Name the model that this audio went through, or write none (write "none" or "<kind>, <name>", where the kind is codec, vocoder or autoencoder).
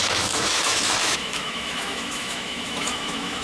autoencoder, DAC-VAE